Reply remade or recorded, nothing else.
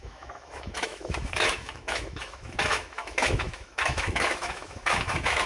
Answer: remade